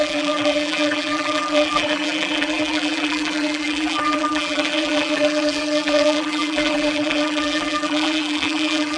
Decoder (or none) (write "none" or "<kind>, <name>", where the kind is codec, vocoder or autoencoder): vocoder, BigVGAN v2